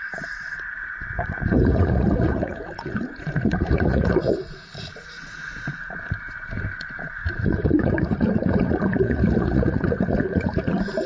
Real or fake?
fake